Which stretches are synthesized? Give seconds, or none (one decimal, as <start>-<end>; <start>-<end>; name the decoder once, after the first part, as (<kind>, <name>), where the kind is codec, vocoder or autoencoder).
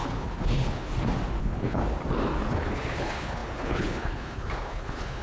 0.0-0.9 (codec, HILCodec); 1.4-1.8; 2.5-5.2